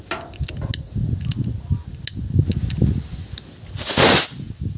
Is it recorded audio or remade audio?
recorded